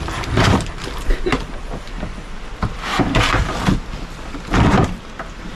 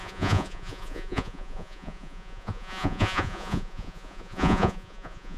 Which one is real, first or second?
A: first